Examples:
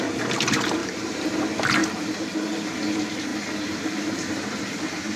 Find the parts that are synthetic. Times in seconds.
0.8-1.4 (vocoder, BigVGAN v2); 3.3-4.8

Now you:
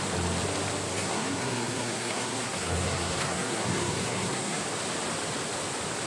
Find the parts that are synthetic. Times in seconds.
0.9-4.6 (codec, SNAC)

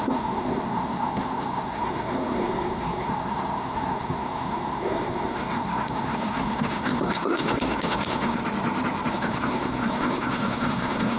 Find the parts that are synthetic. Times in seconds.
0.0-8.4 (codec, SNAC); 9.1-11.2

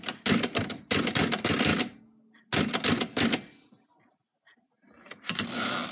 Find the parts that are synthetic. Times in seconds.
none